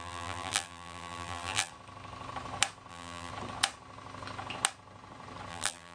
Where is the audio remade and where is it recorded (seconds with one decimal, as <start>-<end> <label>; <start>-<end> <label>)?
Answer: 0.0-1.7 remade; 1.7-2.9 recorded; 2.9-3.3 remade; 3.3-5.5 recorded; 5.5-5.9 remade